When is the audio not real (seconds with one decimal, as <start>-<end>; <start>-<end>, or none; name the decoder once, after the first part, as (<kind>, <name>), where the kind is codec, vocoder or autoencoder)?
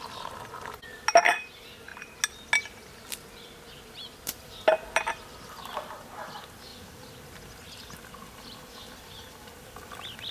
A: none